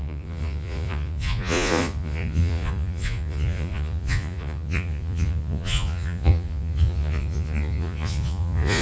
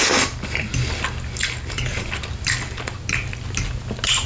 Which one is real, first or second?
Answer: second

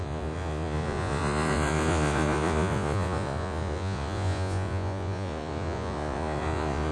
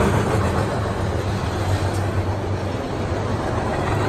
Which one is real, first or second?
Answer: second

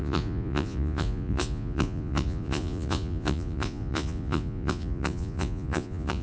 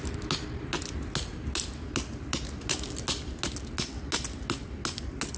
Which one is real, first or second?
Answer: second